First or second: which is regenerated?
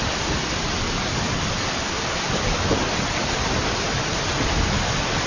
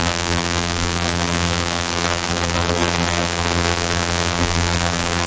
second